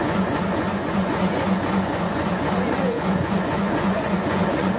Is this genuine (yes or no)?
no